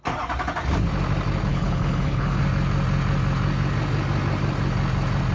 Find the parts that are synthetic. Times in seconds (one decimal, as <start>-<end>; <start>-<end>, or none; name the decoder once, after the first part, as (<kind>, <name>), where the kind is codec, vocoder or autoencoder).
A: 1.5-2.4 (codec, HILCodec)